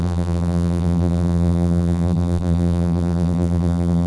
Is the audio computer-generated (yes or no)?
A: yes